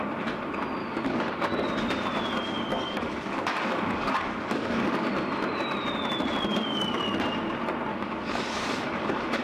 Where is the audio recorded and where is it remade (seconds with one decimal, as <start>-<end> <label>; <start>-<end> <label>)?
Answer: 0.0-0.8 recorded; 0.8-1.7 remade; 1.7-2.7 recorded; 2.7-5.1 remade; 5.1-6.5 recorded; 6.5-7.0 remade; 7.0-7.9 recorded; 7.9-9.4 remade